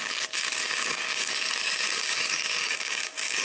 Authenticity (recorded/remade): remade